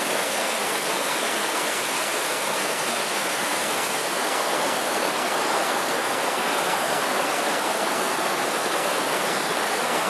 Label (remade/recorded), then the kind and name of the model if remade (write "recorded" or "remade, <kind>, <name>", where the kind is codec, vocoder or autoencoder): remade, codec, SNAC